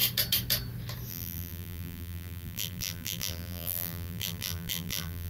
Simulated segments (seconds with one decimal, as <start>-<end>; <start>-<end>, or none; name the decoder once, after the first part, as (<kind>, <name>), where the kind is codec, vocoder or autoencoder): 1.1-5.3 (vocoder, BigVGAN v2)